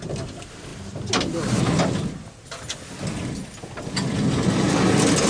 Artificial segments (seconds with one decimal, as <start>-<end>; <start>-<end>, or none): none